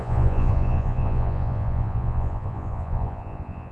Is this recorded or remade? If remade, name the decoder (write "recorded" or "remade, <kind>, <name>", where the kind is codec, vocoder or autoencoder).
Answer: remade, vocoder, Vocos